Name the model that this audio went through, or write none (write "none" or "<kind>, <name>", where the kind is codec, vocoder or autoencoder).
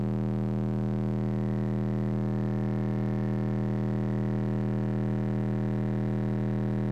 none